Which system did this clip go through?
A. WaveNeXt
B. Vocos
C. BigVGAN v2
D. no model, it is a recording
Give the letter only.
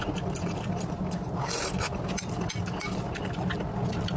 D